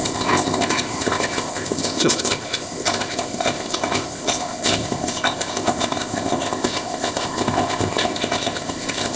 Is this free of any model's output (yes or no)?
no